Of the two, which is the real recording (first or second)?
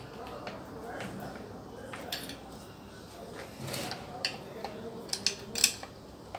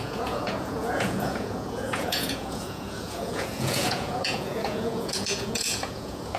first